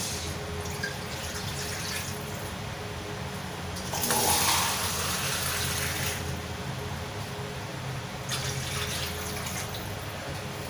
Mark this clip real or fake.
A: real